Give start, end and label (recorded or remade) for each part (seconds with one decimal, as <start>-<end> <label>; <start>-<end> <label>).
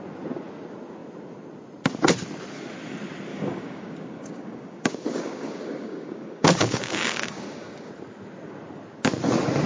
0.0-3.3 recorded; 3.3-7.9 remade; 7.9-9.7 recorded